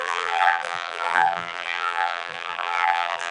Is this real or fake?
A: fake